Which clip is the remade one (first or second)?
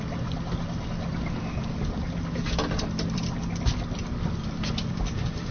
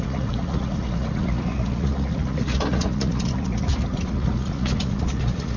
second